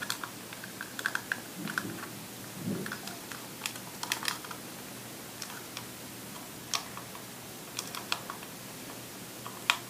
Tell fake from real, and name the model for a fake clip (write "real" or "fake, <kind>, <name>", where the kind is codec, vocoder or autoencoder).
real